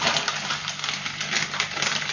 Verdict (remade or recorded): recorded